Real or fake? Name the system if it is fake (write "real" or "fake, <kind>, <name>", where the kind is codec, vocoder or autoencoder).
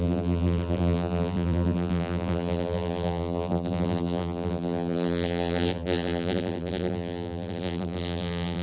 fake, vocoder, BigVGAN v2